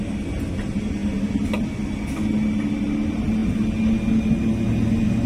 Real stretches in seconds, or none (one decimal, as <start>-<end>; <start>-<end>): 0.0-5.3

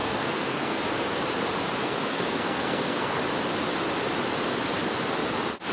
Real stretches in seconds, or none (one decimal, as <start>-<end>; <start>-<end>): 0.8-1.8; 3.2-5.7

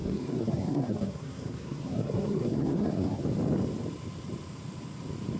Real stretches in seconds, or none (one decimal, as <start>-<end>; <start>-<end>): 3.2-5.4